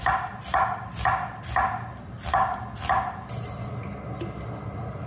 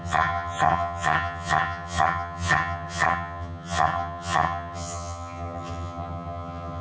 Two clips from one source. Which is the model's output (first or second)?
second